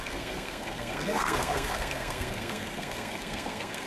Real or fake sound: fake